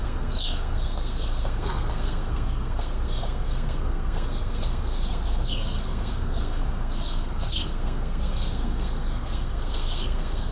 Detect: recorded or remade remade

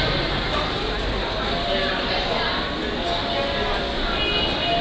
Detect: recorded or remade recorded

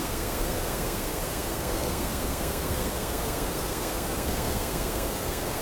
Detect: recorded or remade remade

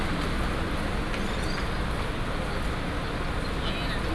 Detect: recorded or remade recorded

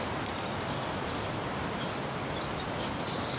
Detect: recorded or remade recorded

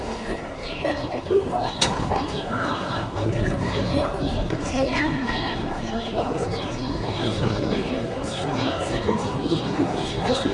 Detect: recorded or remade remade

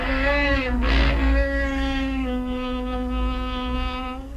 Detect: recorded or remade remade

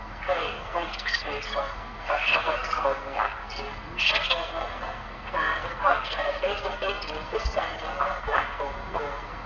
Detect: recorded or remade remade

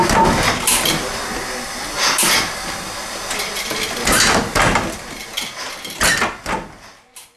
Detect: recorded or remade recorded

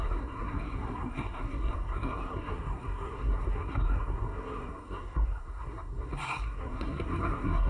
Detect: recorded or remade remade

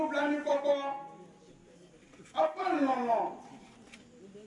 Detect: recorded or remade recorded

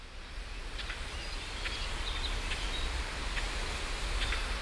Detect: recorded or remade recorded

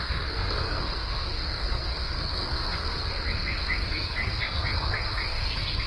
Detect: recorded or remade remade